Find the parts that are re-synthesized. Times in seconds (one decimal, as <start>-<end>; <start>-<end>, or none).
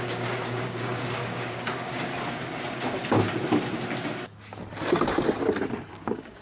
0.0-2.1; 5.9-6.4